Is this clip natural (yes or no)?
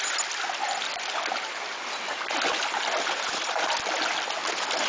yes